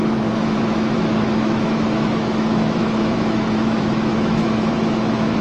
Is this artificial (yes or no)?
yes